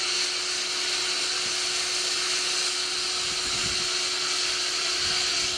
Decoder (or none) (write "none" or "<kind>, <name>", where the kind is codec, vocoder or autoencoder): none